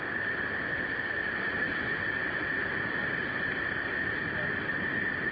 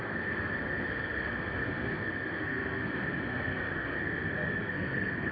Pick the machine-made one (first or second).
second